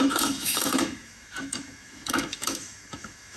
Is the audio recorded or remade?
remade